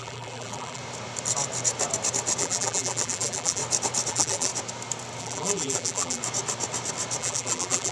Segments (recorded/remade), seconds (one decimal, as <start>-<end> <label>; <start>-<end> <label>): 0.0-0.8 remade; 0.8-2.4 recorded; 2.4-3.6 remade; 3.6-4.1 recorded; 4.1-4.5 remade; 4.5-5.2 recorded; 5.2-6.2 remade; 6.2-7.2 recorded; 7.2-7.9 remade